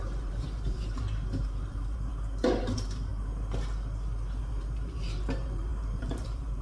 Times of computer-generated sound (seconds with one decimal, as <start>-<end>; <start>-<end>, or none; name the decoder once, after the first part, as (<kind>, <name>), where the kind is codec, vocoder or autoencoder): 0.0-2.1 (vocoder, BigVGAN v2); 2.6-3.1; 4.4-6.6